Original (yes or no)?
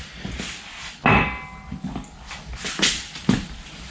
yes